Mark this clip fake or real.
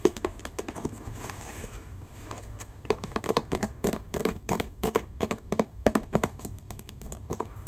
fake